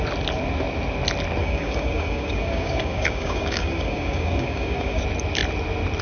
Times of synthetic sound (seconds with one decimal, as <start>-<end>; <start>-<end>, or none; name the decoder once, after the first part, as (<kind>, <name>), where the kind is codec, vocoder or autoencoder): 1.4-5.0 (codec, DAC)